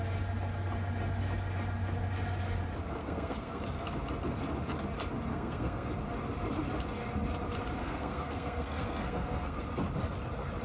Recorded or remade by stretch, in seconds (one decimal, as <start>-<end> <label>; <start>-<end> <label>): 0.0-3.0 recorded; 3.0-3.6 remade; 3.6-5.3 recorded; 5.3-5.9 remade; 5.9-7.8 recorded; 7.8-9.6 remade; 9.6-10.6 recorded